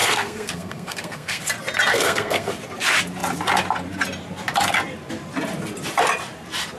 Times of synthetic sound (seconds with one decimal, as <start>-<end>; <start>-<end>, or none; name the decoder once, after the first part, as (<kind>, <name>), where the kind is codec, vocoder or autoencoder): 0.0-1.4 (codec, SNAC); 1.9-2.5